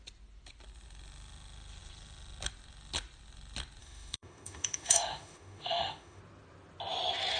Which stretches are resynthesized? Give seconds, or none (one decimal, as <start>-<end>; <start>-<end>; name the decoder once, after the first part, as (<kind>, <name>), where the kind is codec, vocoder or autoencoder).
3.8-6.2 (autoencoder, DAC-VAE)